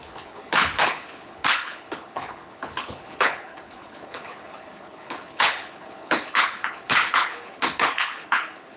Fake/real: fake